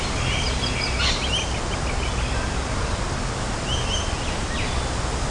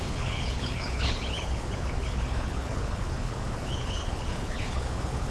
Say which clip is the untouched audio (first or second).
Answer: first